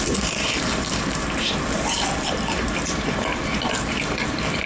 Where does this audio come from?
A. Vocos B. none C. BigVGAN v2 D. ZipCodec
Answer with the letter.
C